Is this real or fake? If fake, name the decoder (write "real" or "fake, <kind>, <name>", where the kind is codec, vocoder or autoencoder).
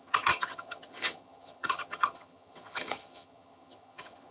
fake, vocoder, HiFi-GAN